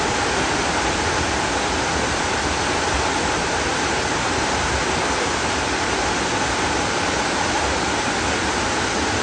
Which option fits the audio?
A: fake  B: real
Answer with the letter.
B